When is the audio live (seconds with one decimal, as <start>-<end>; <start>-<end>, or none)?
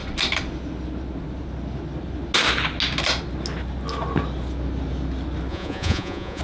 0.0-5.5